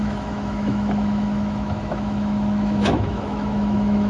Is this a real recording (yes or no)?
no